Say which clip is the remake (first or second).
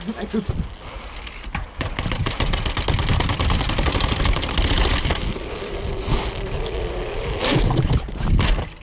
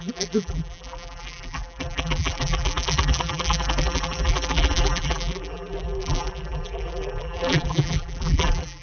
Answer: second